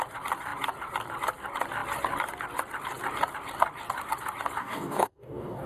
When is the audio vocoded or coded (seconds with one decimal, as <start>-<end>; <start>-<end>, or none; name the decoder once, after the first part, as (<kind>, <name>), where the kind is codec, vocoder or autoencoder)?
4.6-5.7 (codec, DAC)